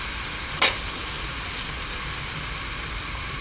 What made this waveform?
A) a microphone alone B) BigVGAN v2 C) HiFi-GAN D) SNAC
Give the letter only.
A